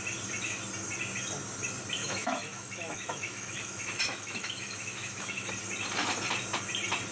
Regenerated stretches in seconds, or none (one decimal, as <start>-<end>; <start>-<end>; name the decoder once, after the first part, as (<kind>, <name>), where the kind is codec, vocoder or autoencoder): 2.0-5.5 (autoencoder, DAC-VAE)